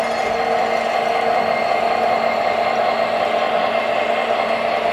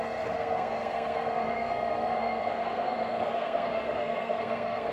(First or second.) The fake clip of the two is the second